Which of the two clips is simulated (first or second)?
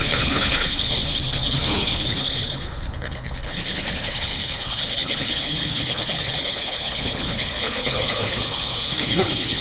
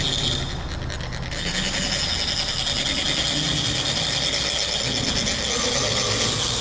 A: first